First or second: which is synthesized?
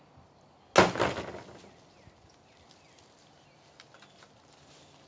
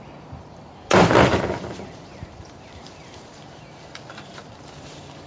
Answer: second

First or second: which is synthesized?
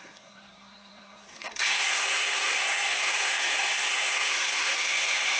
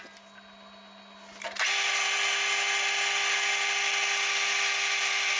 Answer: first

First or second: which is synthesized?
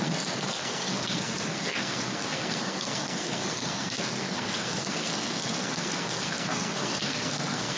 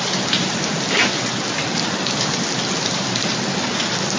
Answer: first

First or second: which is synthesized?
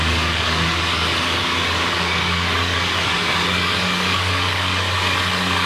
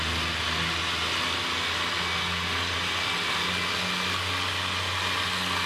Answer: first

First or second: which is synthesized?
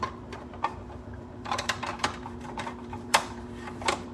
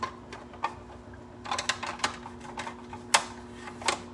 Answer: first